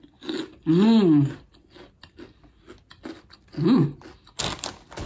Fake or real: real